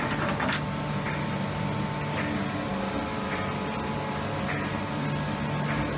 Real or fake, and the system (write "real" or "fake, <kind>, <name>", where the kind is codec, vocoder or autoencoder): real